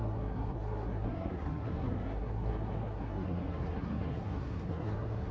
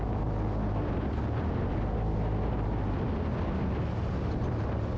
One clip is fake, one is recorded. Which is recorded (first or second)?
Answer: second